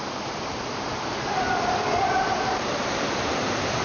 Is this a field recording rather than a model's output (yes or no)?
no